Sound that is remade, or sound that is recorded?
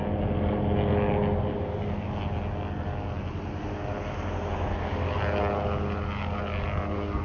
recorded